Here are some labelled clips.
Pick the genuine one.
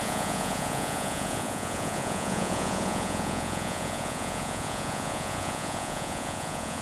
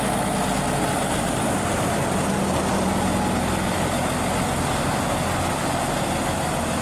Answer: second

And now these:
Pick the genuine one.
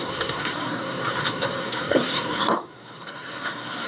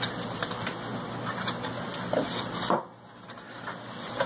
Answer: second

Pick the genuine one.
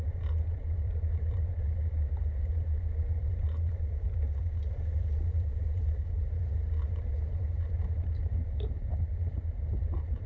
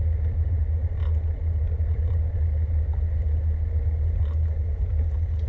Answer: second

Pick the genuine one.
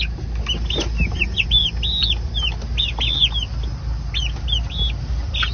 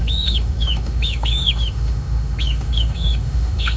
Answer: first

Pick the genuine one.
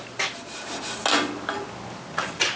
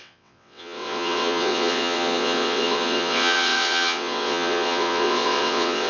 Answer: first